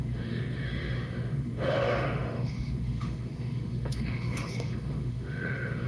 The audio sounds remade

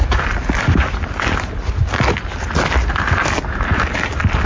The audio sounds recorded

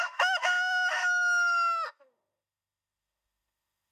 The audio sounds remade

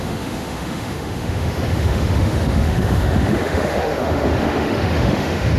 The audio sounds remade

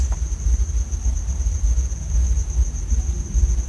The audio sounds recorded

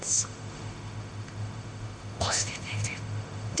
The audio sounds remade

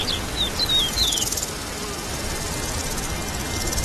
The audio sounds recorded